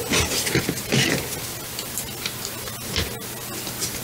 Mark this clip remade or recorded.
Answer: recorded